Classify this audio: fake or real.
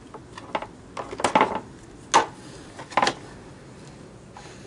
real